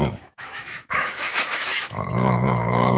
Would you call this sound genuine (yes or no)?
no